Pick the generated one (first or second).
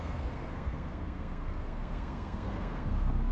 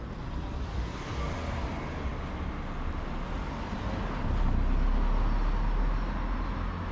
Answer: first